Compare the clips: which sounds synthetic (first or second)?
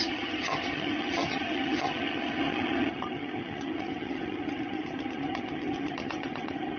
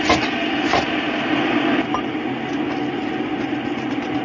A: first